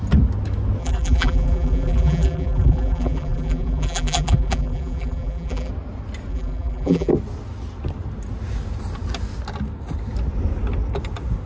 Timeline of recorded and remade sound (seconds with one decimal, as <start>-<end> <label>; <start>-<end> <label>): 0.0-0.8 recorded; 0.8-5.7 remade; 5.7-6.3 recorded; 6.3-7.1 remade; 7.1-11.5 recorded